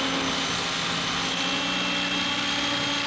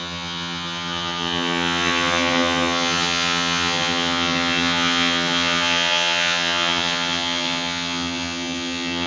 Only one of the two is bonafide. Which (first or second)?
first